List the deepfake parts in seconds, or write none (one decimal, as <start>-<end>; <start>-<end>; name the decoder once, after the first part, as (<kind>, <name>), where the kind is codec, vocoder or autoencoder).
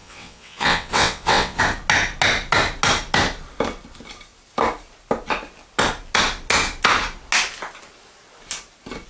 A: 0.0-1.6 (vocoder, WaveNeXt)